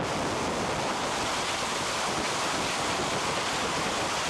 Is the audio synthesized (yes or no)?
no